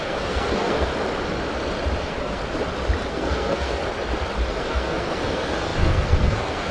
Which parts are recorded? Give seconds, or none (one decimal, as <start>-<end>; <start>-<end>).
0.9-2.0; 2.4-3.1; 3.8-4.5